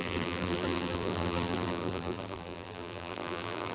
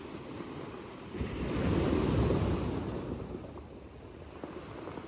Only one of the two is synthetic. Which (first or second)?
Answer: first